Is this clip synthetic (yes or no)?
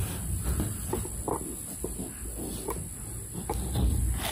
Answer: no